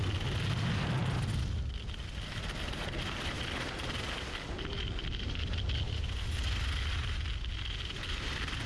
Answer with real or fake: real